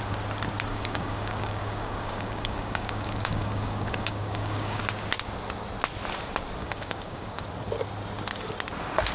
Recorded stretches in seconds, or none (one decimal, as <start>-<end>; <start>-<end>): 0.0-0.7; 4.8-6.6; 7.4-9.1